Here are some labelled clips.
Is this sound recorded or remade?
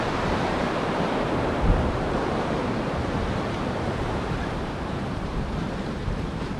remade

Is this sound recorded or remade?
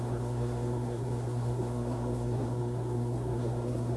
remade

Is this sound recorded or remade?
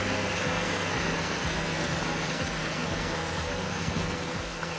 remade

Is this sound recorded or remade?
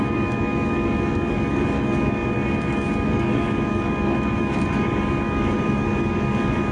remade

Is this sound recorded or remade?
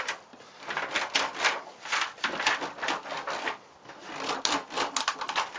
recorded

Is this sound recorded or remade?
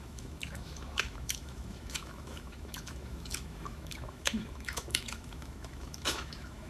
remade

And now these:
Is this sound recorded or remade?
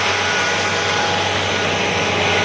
recorded